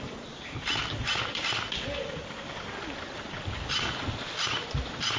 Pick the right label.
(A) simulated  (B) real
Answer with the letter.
B